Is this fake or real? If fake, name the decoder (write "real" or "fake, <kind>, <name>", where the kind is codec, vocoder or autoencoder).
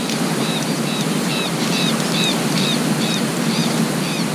real